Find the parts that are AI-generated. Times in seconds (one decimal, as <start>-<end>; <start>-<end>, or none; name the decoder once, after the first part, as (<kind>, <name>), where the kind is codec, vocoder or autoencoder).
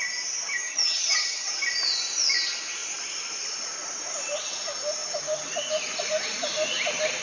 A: 0.6-1.5 (vocoder, HiFi-GAN)